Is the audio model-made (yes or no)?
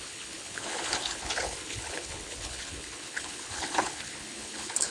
yes